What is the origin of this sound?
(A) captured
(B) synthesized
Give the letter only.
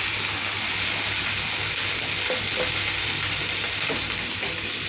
A